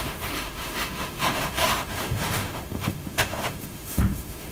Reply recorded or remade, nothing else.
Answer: remade